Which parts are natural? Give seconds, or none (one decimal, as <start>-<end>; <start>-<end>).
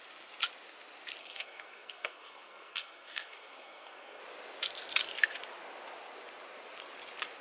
0.0-1.2; 4.2-7.4